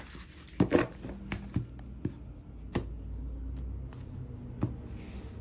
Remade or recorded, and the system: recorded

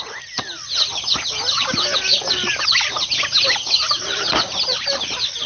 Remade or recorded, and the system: recorded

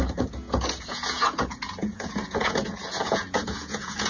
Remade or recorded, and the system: remade, vocoder, Vocos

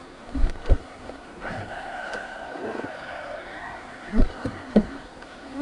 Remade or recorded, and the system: remade, codec, SNAC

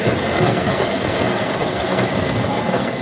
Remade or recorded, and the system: remade, codec, SNAC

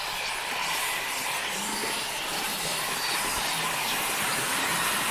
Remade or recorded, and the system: recorded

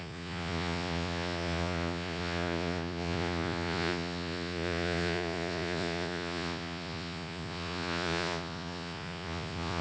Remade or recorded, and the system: remade, vocoder, Vocos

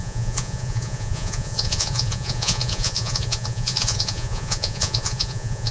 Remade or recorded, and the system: remade, vocoder, Vocos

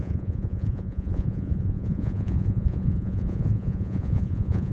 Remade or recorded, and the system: remade, vocoder, Vocos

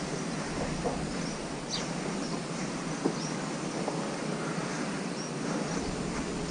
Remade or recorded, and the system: recorded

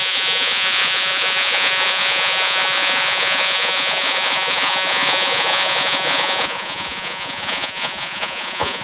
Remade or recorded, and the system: remade, vocoder, Vocos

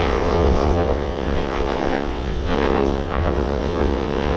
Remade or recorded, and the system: remade, vocoder, WaveNeXt